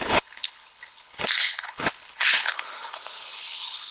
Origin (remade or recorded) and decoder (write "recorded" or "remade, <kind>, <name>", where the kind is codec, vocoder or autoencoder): remade, codec, HILCodec